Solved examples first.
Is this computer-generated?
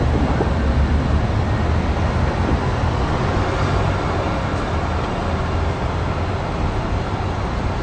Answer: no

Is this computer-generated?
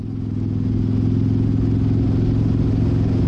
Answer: no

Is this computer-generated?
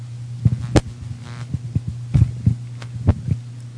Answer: no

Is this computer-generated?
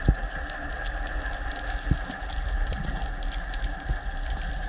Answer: no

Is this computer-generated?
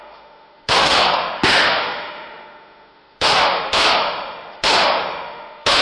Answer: yes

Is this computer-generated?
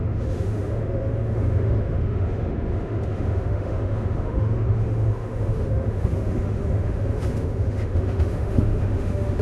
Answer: yes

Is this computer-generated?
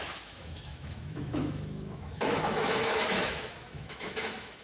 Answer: yes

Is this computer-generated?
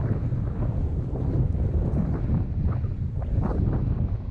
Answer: no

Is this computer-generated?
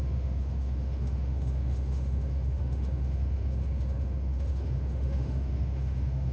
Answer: yes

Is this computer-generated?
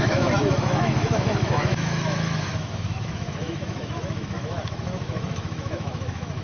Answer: yes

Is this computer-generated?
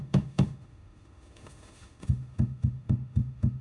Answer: yes